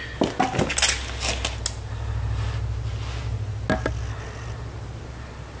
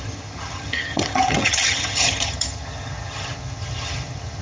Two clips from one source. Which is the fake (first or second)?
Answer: second